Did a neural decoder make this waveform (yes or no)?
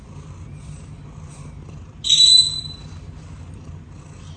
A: no